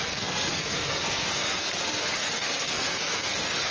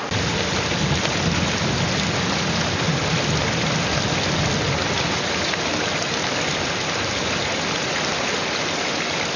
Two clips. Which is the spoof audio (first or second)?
first